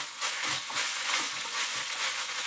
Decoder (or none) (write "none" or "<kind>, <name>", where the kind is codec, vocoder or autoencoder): vocoder, Vocos